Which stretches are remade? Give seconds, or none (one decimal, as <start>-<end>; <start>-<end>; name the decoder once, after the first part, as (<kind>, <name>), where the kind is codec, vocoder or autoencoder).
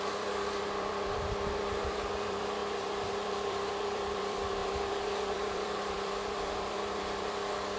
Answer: 0.0-7.8 (vocoder, BigVGAN v2)